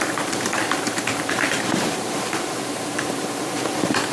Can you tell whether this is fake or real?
fake